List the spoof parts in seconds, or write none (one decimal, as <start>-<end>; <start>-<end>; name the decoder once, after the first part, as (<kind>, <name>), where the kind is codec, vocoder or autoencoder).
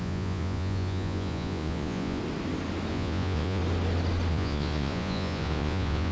0.0-2.2 (vocoder, Vocos); 2.9-3.6; 4.3-6.1